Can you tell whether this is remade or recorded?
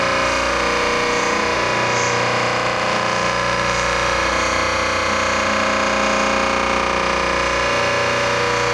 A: remade